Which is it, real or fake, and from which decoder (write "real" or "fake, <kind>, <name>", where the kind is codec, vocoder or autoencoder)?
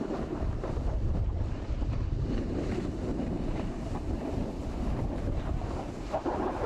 fake, vocoder, BigVGAN v2